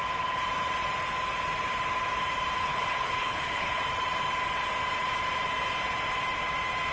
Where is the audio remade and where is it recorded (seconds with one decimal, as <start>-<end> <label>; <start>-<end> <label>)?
0.0-2.6 recorded; 2.6-3.8 remade; 3.8-6.9 recorded